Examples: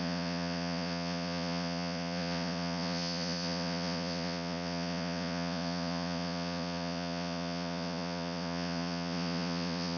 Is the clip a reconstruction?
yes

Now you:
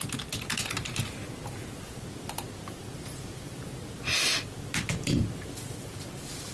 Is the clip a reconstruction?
no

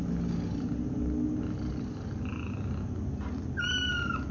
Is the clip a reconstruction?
no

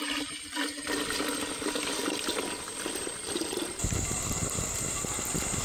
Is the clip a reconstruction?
no